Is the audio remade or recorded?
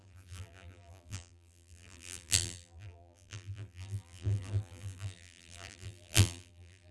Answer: remade